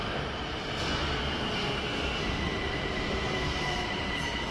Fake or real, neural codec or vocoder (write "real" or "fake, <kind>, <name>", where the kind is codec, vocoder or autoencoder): real